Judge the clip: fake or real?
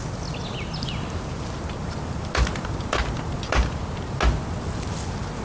real